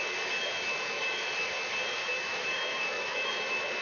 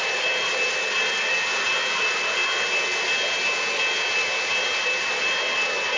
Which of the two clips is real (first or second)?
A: second